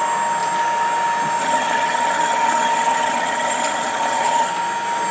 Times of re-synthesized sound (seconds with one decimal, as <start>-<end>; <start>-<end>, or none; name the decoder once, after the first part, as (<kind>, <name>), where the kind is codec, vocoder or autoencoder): 1.4-4.5 (vocoder, HiFi-GAN)